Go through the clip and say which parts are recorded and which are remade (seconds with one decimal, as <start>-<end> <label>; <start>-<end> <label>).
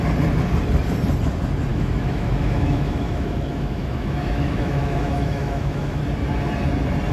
0.0-1.7 recorded; 1.7-6.0 remade; 6.0-7.1 recorded